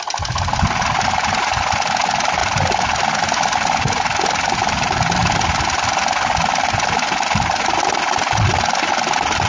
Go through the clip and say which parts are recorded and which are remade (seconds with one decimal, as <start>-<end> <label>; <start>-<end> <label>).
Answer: 0.0-9.5 recorded